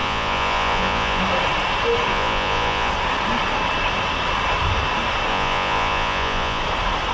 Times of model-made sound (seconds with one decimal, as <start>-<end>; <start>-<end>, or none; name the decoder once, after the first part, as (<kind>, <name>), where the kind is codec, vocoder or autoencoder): 0.0-1.2 (vocoder, Vocos); 2.1-2.9; 5.3-6.6